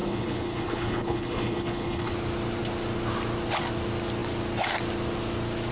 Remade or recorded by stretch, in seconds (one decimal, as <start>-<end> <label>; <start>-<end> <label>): 0.0-2.1 remade; 2.1-5.7 recorded

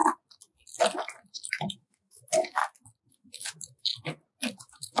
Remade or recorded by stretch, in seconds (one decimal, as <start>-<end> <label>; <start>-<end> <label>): 0.0-1.5 recorded; 1.5-2.6 remade; 2.6-3.1 recorded; 3.1-3.9 remade; 3.9-4.6 recorded; 4.6-5.0 remade

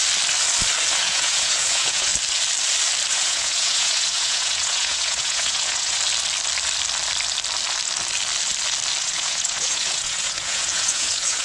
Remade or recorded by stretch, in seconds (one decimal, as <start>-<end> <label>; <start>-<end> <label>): 0.0-1.0 recorded; 1.0-2.1 remade; 2.1-3.1 recorded; 3.1-6.0 remade; 6.0-9.0 recorded; 9.0-11.4 remade

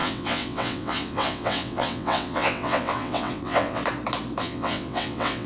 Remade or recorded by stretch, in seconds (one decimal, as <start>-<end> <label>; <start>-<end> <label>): 0.0-3.8 remade; 3.8-4.4 recorded; 4.4-5.5 remade